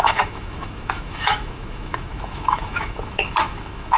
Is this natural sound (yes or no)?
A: no